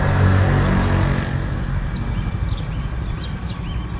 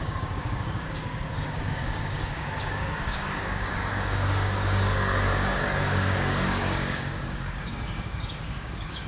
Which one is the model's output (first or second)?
second